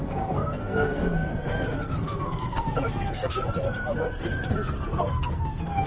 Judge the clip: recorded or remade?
remade